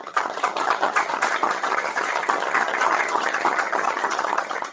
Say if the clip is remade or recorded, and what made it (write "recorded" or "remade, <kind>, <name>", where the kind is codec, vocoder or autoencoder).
remade, vocoder, HiFi-GAN